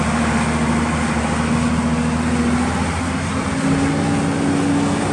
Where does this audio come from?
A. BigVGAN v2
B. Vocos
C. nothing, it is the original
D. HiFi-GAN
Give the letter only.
C